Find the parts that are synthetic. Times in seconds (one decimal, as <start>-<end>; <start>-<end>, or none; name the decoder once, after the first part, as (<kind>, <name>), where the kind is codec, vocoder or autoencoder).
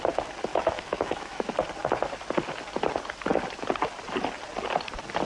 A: 0.5-1.5 (autoencoder, DAC-VAE)